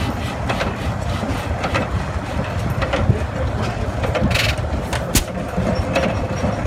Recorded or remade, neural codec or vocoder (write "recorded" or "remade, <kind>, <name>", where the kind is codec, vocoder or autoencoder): recorded